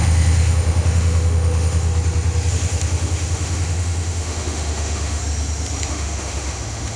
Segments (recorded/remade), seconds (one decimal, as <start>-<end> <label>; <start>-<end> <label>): 0.0-1.9 remade; 1.9-2.5 recorded; 2.5-5.2 remade; 5.2-5.9 recorded; 5.9-7.0 remade